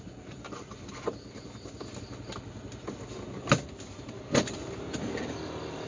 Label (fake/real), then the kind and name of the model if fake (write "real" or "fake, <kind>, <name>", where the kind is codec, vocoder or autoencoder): real